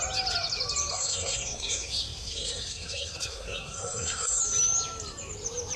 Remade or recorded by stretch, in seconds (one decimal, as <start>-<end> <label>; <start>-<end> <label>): 0.0-0.9 recorded; 0.9-4.4 remade; 4.4-5.8 recorded